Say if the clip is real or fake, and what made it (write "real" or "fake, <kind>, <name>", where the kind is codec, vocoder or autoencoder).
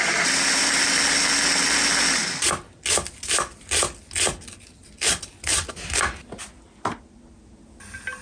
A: real